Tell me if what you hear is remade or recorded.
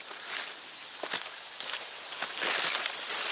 recorded